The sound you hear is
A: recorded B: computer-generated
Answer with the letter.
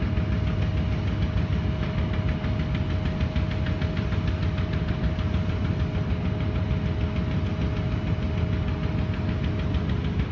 A